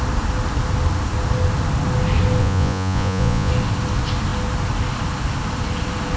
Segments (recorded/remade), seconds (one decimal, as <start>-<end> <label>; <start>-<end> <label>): 0.0-2.4 recorded; 2.4-3.5 remade; 3.5-6.2 recorded